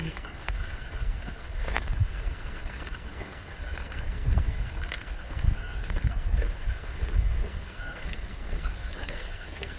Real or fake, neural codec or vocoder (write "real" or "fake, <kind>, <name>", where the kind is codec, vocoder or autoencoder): fake, codec, SNAC